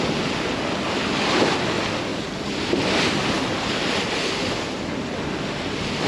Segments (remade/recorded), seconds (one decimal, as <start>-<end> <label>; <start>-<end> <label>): 0.0-6.1 recorded